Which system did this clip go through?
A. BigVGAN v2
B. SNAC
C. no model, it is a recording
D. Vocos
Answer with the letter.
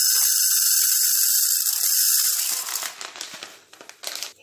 C